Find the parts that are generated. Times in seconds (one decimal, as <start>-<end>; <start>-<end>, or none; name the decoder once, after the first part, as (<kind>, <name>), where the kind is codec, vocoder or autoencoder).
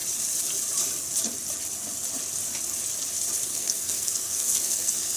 3.4-5.2 (codec, SNAC)